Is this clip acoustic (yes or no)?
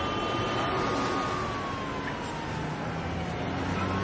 yes